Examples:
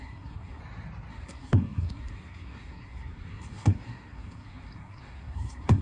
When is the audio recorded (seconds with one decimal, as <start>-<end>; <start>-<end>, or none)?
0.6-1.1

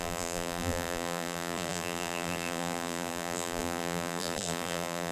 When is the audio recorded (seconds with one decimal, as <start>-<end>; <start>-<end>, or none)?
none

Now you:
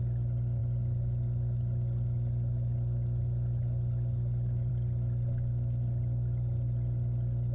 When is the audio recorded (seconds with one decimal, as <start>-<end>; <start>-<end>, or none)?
0.0-7.5